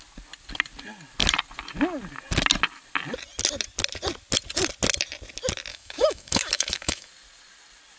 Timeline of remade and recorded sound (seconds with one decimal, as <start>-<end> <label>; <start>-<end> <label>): 0.0-5.7 recorded; 5.7-7.1 remade; 7.1-8.0 recorded